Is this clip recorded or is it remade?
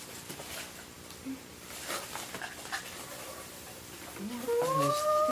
remade